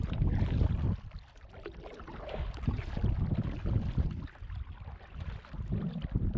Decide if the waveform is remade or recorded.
recorded